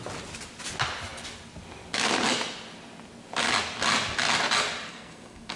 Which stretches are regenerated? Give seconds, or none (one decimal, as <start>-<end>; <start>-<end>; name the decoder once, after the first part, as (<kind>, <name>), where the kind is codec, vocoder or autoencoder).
4.9-5.6 (codec, SNAC)